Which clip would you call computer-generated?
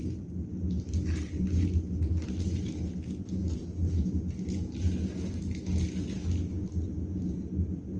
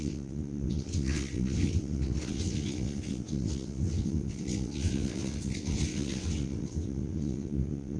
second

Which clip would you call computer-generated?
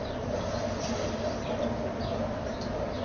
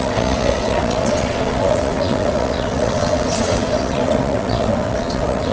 second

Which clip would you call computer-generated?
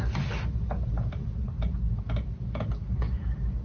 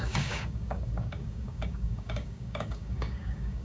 second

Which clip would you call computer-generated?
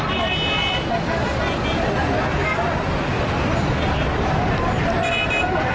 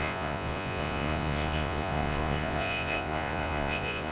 second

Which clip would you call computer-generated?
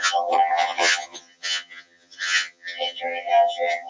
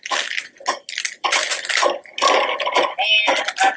first